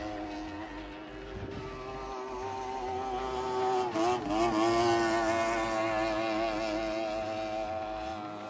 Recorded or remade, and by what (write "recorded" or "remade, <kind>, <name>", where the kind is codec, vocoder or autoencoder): recorded